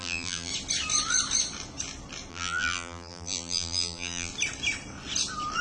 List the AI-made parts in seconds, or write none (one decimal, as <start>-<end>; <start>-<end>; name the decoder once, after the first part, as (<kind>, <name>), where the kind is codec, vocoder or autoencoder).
0.0-0.5 (vocoder, BigVGAN v2); 2.3-4.3